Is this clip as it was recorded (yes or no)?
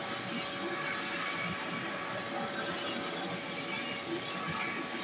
yes